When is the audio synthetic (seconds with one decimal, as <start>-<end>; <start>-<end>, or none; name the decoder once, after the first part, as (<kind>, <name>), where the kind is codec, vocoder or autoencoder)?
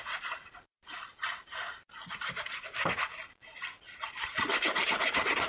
0.0-1.1 (vocoder, BigVGAN v2); 4.4-5.5